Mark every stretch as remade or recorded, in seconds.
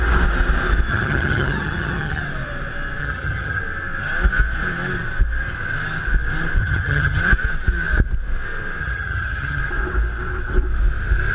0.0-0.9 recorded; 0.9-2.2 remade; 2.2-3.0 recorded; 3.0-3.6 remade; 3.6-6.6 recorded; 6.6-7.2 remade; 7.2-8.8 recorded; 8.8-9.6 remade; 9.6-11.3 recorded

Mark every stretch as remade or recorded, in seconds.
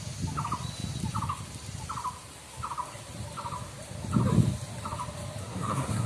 0.0-5.4 recorded; 5.4-6.1 remade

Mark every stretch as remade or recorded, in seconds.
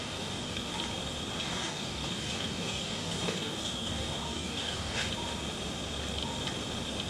0.0-0.7 remade; 0.7-1.4 recorded; 1.4-5.1 remade; 5.1-7.1 recorded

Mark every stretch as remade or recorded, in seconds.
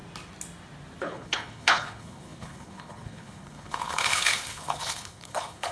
0.0-1.0 recorded; 1.0-5.7 remade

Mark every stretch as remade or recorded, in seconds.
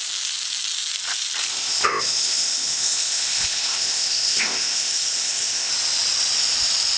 0.0-1.5 recorded; 1.5-5.7 remade; 5.7-7.0 recorded